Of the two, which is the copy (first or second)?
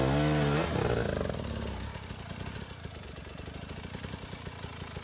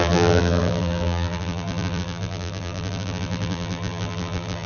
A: second